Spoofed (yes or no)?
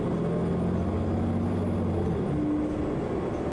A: no